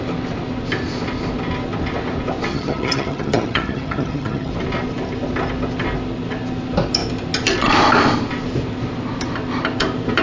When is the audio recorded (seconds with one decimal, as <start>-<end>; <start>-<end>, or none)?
0.0-2.5; 4.5-10.2